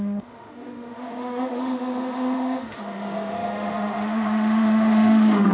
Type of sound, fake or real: fake